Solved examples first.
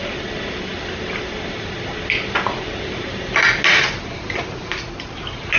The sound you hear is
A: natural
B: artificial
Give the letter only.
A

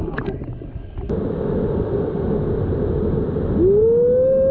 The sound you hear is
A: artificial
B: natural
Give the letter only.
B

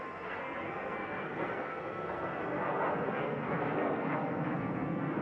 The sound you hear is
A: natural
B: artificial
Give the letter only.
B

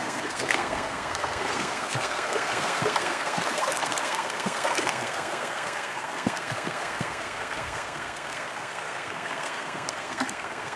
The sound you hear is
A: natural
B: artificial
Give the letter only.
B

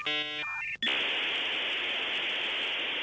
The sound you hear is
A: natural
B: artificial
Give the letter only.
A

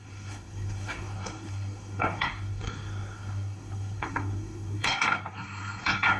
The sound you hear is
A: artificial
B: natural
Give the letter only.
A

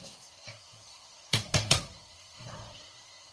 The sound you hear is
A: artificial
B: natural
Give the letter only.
A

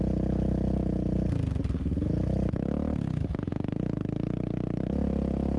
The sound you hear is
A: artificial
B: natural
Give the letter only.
B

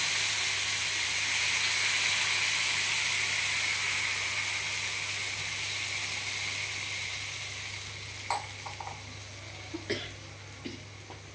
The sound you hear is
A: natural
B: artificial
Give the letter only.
A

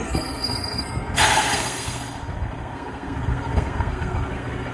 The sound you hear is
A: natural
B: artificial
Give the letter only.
B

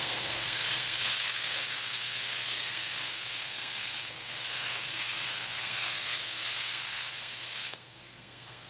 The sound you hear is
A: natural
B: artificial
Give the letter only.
B